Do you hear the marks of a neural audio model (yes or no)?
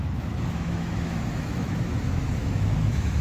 yes